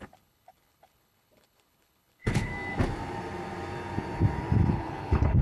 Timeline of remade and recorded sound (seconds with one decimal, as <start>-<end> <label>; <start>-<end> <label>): 0.0-2.5 remade; 2.5-4.7 recorded; 4.7-5.4 remade